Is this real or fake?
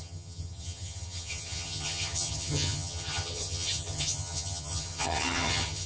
fake